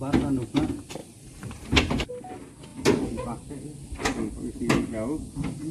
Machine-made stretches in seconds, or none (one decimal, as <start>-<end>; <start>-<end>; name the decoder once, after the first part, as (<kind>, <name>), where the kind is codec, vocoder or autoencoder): 1.0-2.1 (vocoder, BigVGAN v2)